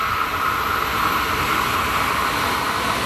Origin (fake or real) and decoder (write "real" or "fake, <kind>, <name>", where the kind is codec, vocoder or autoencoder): real